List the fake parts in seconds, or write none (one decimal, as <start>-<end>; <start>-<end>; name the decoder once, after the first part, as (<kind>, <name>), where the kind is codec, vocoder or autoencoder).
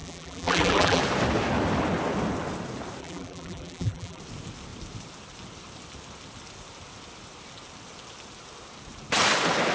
0.0-1.0 (vocoder, BigVGAN v2); 3.0-4.2